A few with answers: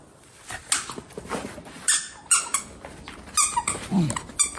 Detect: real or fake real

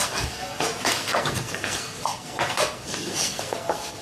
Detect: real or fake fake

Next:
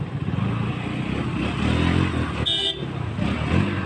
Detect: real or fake real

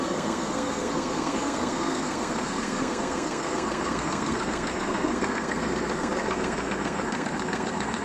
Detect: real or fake fake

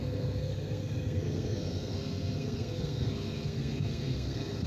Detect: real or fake fake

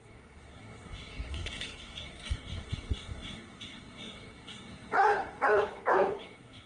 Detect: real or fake fake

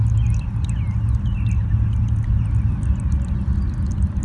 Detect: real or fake real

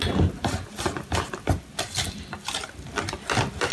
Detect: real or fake real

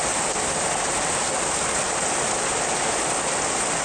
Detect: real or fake real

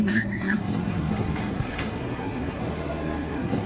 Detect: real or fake fake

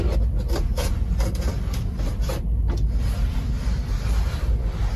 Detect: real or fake real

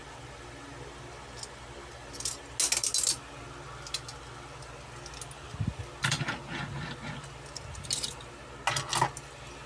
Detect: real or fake real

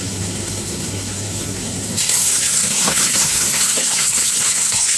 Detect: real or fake fake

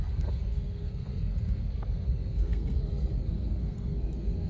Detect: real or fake fake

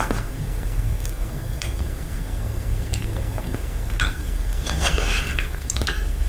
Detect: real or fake fake